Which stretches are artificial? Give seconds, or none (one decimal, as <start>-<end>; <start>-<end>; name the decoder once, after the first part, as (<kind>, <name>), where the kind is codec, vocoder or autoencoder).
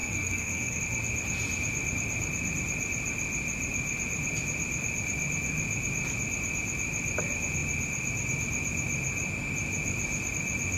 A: 0.0-0.8 (codec, SNAC)